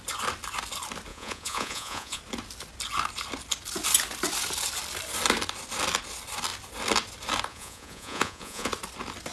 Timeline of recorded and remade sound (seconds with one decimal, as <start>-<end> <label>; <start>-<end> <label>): 0.0-1.1 recorded; 1.1-2.2 remade; 2.2-7.5 recorded; 7.5-8.7 remade; 8.7-9.3 recorded